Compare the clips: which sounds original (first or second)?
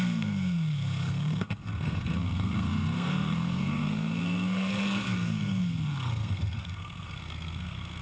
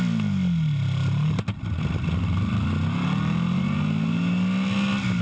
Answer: second